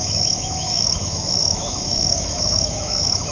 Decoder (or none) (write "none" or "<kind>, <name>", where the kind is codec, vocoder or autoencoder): autoencoder, DAC-VAE